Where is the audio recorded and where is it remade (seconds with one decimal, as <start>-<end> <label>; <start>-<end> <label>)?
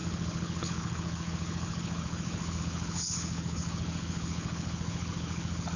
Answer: 0.0-5.8 remade